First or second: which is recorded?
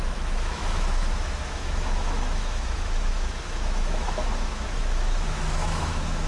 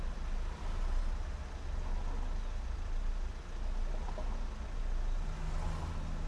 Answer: second